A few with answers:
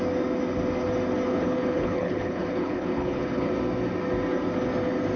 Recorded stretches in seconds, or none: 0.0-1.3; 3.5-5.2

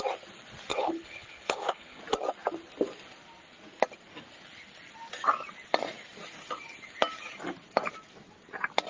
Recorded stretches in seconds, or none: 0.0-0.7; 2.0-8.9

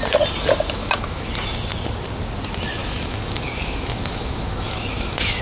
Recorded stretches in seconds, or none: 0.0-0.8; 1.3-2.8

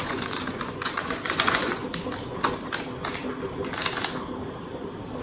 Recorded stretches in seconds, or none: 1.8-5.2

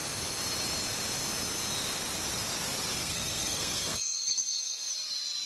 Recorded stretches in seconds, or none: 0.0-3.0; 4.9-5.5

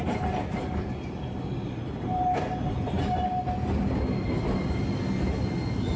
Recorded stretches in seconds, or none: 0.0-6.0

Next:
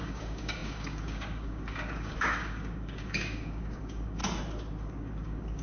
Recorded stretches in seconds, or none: 4.2-4.8